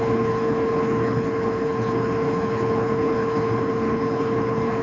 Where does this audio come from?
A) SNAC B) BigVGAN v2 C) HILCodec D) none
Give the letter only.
C